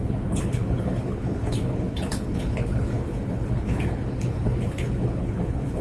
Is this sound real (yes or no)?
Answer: no